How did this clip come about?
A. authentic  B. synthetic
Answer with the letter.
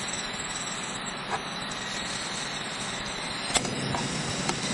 A